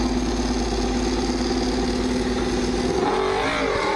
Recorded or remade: recorded